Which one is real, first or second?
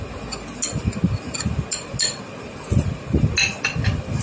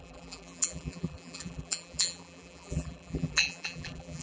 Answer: first